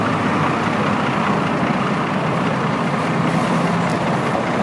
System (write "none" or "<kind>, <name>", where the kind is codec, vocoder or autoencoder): none